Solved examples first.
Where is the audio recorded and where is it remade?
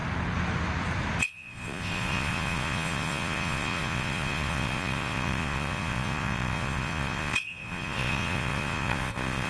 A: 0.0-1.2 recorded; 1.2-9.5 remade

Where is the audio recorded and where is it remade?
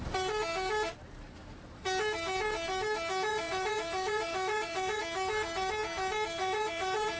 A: 0.0-3.3 recorded; 3.3-5.0 remade; 5.0-6.4 recorded; 6.4-7.2 remade